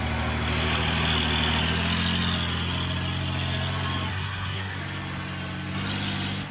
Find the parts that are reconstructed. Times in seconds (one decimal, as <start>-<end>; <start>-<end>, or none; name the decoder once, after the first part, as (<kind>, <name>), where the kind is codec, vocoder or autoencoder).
4.1-4.8 (codec, SNAC)